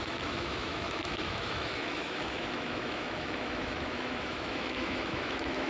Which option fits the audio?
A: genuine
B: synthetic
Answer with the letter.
B